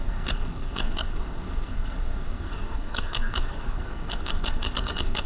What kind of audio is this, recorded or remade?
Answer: remade